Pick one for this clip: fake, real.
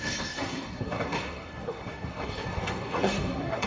fake